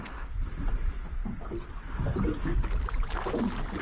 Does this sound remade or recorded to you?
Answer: recorded